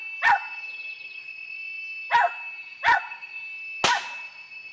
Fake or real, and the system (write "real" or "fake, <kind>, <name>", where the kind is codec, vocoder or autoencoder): real